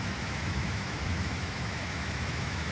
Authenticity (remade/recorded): remade